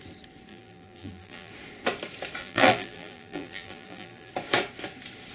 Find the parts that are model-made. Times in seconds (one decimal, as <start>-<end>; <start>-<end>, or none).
0.5-1.5; 2.4-4.3